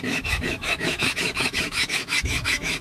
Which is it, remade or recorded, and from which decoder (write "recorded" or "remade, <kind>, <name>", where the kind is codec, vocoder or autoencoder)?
remade, autoencoder, DAC-VAE